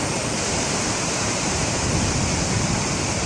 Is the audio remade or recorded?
remade